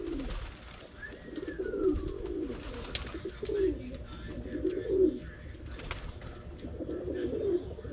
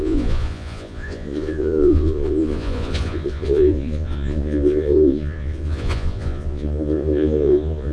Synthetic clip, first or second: second